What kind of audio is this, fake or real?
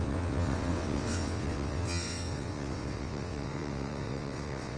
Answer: fake